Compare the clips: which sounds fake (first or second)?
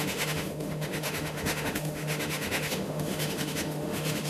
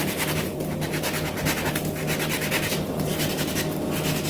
first